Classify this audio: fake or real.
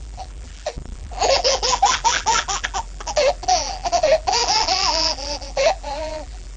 fake